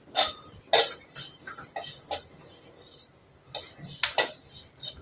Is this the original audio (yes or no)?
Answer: yes